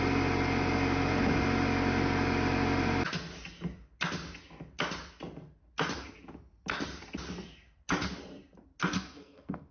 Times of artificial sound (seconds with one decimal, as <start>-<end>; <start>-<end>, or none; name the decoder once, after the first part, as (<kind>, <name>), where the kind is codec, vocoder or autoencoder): 8.8-9.7 (codec, SNAC)